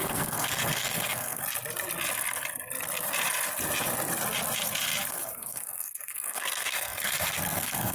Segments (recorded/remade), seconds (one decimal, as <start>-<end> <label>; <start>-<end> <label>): 0.0-1.4 remade; 1.4-5.1 recorded; 5.1-7.9 remade